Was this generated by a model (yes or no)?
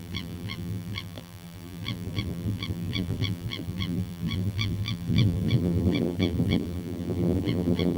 yes